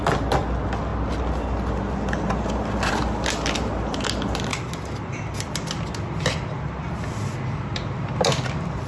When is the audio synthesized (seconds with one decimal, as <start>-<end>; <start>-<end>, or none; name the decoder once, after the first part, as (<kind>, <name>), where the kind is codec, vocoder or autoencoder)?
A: 4.5-8.9 (vocoder, BigVGAN v2)